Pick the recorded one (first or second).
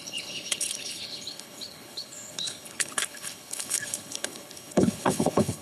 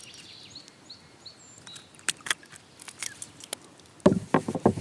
second